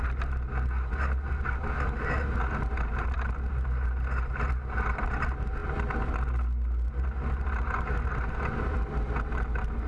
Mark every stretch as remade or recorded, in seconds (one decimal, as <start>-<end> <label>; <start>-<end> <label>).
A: 0.0-9.9 recorded